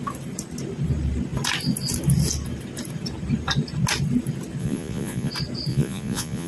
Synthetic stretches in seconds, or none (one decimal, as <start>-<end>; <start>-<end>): 4.6-5.3; 5.7-6.5